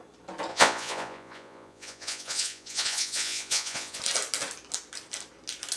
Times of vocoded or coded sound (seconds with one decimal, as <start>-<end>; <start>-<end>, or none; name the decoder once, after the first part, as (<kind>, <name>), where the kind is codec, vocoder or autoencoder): 0.5-4.0 (vocoder, Vocos)